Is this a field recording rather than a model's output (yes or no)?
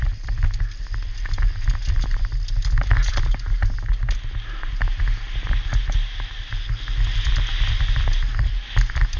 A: yes